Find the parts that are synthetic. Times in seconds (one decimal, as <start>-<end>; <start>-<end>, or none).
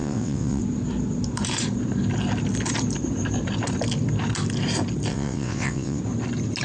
0.0-0.6; 5.1-6.0